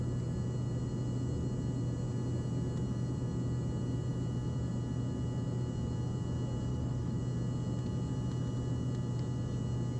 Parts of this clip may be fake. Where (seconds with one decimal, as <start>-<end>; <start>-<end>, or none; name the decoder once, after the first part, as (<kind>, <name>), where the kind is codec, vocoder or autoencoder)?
6.7-7.2 (autoencoder, DAC-VAE)

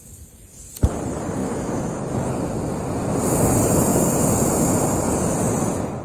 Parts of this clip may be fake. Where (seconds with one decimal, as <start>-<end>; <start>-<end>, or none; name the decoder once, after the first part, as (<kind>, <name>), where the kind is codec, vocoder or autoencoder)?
1.4-2.0 (autoencoder, DAC-VAE)